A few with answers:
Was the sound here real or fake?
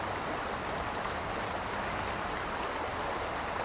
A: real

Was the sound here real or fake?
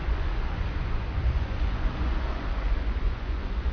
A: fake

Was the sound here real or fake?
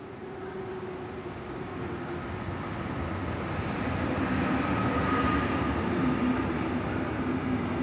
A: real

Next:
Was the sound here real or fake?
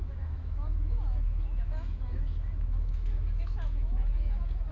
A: fake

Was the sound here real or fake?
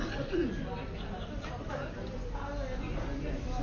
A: real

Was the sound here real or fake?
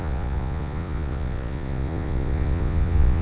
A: fake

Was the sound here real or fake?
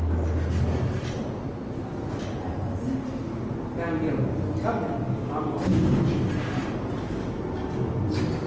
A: real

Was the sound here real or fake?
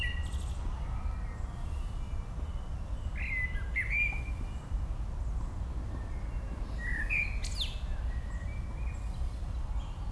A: real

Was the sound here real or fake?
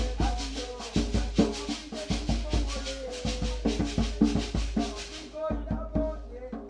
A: real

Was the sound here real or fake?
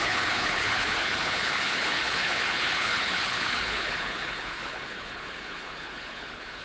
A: fake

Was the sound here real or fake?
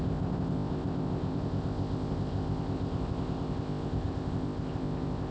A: fake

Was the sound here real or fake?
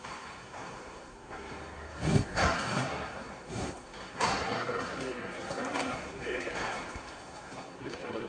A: fake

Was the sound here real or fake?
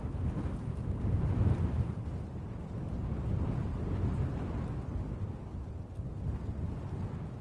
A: real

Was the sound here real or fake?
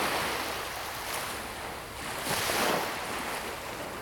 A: real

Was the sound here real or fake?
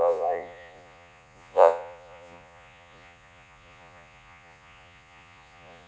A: fake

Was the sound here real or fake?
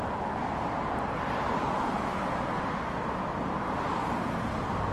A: real